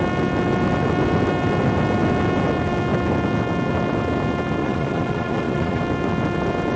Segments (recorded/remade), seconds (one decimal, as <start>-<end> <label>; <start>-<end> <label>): 0.0-4.6 recorded; 4.6-5.8 remade; 5.8-6.8 recorded